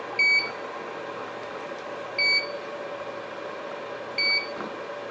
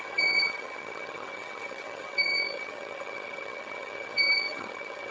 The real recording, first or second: first